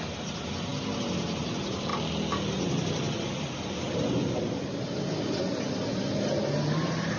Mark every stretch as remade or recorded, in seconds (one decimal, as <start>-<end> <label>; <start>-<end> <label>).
0.0-7.2 recorded